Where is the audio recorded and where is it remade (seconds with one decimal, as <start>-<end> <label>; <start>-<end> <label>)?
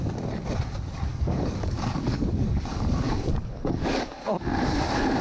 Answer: 0.0-1.1 recorded; 1.1-4.2 remade; 4.2-5.2 recorded